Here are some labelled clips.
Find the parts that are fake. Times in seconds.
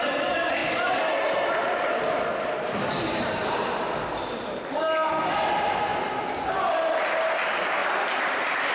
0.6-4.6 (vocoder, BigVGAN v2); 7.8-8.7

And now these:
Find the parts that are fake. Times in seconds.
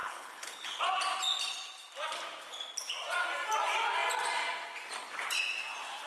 0.0-0.8 (codec, HILCodec)